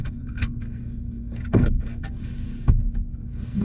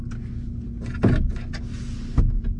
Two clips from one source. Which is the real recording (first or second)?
second